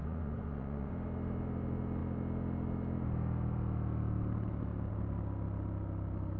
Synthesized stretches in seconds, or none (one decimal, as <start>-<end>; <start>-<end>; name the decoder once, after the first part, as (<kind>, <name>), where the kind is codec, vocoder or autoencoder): 0.0-0.9 (vocoder, Vocos)